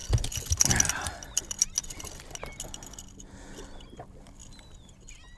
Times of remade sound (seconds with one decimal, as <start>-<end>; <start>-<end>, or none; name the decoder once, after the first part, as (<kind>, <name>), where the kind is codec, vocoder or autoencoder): none